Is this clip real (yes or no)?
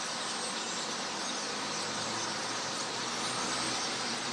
yes